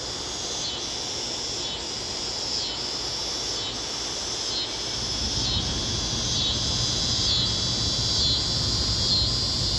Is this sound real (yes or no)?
yes